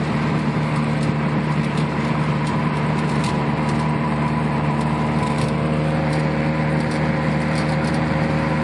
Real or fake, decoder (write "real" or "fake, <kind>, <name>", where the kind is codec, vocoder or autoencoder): fake, vocoder, BigVGAN v2